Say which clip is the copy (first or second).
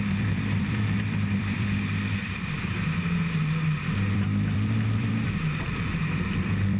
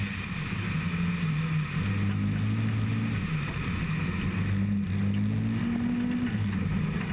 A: first